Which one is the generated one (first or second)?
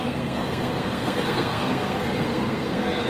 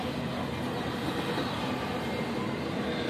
first